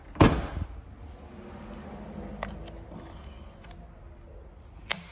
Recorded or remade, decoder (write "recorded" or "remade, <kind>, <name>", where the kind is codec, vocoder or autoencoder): recorded